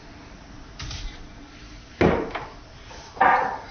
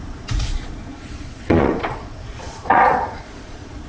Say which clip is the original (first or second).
first